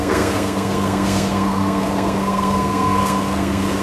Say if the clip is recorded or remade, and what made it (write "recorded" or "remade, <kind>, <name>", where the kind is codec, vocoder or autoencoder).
remade, codec, SNAC